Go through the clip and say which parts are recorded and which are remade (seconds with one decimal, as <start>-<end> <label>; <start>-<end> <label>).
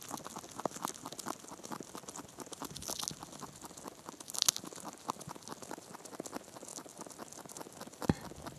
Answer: 0.0-8.6 recorded